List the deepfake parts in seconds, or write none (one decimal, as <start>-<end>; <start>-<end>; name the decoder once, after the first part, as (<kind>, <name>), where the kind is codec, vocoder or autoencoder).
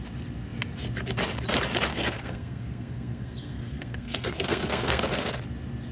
1.9-5.4 (codec, SNAC)